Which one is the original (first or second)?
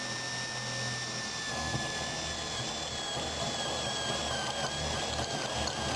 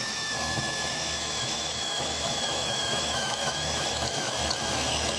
first